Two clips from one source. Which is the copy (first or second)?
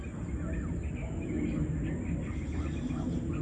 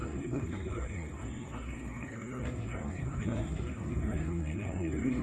second